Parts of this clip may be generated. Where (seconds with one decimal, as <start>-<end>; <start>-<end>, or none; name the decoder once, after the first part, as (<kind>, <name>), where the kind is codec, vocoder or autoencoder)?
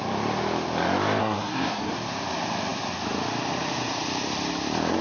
1.2-1.9 (codec, SNAC)